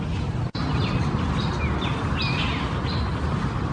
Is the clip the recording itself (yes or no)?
yes